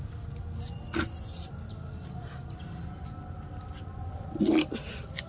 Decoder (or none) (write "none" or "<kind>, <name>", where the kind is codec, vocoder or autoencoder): none